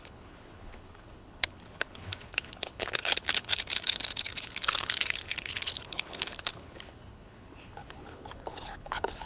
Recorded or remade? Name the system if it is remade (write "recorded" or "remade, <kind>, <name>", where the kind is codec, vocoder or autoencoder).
remade, codec, HILCodec